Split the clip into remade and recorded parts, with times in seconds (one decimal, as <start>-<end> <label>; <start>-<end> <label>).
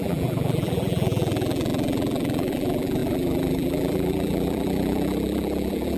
0.0-6.0 remade